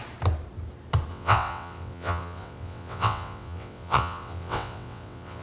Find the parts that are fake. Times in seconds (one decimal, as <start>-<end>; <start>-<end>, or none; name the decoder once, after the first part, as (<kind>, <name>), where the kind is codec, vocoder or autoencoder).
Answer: 1.1-5.4 (vocoder, WaveNeXt)